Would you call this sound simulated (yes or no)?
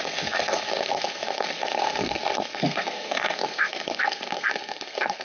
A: yes